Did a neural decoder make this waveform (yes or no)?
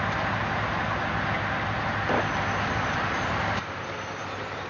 no